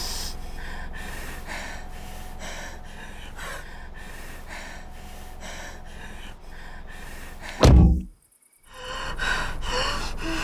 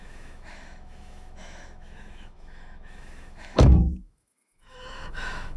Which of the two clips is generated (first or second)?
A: second